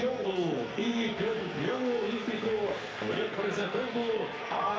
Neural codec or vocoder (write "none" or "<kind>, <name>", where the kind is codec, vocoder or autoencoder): codec, SNAC